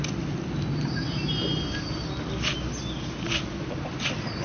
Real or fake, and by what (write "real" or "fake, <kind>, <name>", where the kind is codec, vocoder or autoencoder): real